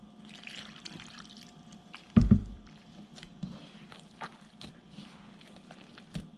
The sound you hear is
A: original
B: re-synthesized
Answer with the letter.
B